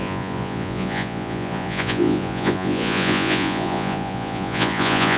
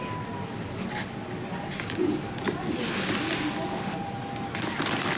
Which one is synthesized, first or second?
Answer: first